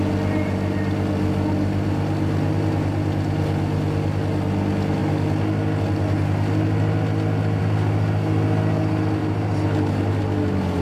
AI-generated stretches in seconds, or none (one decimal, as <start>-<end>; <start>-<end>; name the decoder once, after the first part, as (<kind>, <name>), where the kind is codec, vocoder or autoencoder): 9.2-10.2 (vocoder, BigVGAN v2)